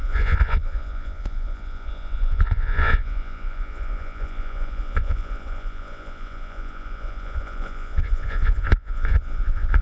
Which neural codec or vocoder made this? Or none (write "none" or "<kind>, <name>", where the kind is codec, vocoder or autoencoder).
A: vocoder, Vocos